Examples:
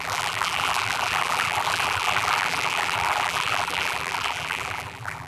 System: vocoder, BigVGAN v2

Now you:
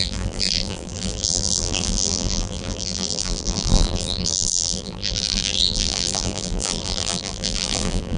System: vocoder, BigVGAN v2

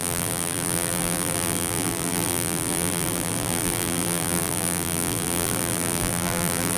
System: vocoder, BigVGAN v2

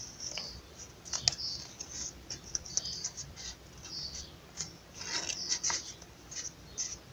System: none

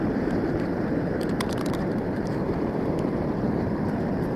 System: vocoder, BigVGAN v2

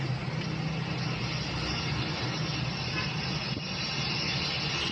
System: none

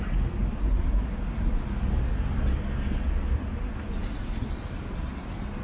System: none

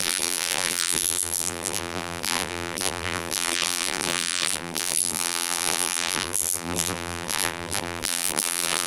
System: vocoder, BigVGAN v2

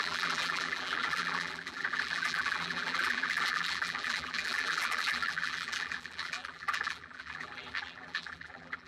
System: vocoder, BigVGAN v2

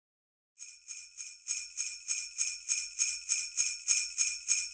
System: none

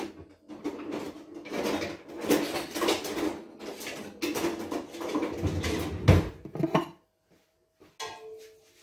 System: none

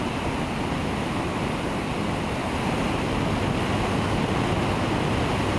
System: none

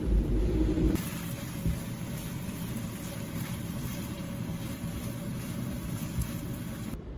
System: vocoder, BigVGAN v2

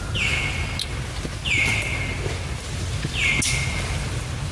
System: none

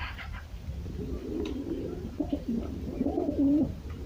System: vocoder, BigVGAN v2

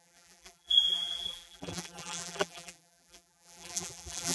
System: vocoder, BigVGAN v2